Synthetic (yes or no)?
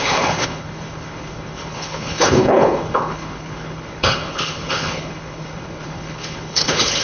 yes